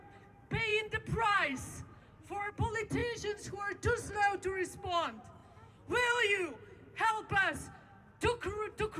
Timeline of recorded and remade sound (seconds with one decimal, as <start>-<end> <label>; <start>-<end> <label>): 0.0-0.7 recorded; 0.7-2.5 remade; 2.5-5.4 recorded; 5.4-7.1 remade; 7.1-9.0 recorded